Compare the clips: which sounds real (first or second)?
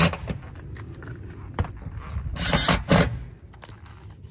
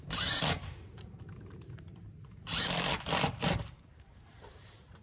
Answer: first